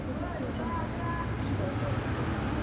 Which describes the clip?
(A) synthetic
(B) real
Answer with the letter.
B